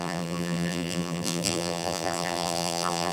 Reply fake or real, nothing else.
fake